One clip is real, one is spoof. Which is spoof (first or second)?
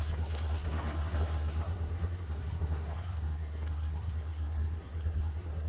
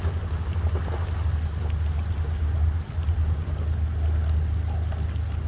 first